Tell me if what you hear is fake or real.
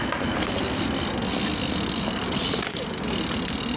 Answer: real